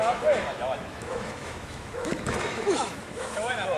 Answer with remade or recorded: remade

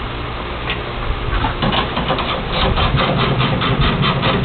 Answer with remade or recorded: recorded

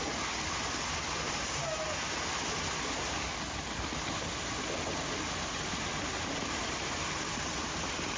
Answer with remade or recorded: recorded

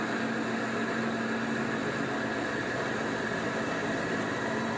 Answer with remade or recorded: recorded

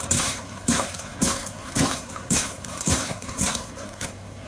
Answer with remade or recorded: remade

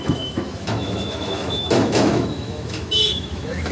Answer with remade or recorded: remade